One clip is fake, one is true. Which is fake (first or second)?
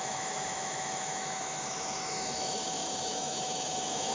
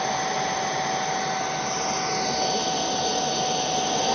first